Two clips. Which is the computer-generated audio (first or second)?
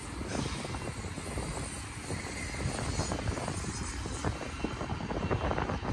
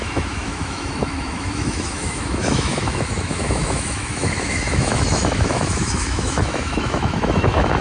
second